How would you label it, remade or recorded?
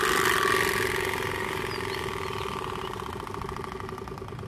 recorded